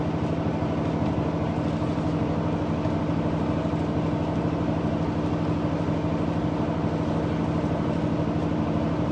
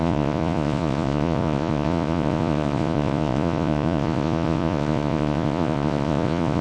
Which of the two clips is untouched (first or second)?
first